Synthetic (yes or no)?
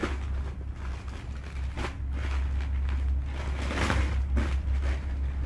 no